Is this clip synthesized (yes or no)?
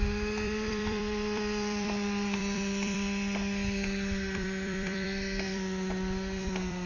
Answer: yes